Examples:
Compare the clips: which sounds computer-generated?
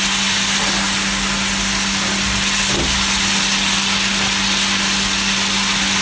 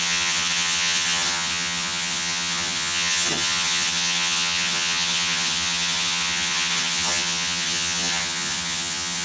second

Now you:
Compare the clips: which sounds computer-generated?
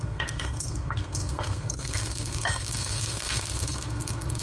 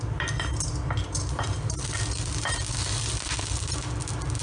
first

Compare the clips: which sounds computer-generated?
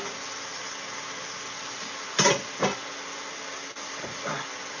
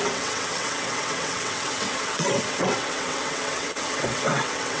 second